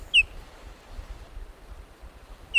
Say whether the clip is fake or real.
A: real